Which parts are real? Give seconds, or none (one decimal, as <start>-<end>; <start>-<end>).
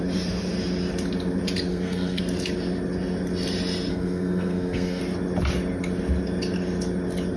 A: 0.0-1.7; 2.2-3.9; 5.0-7.4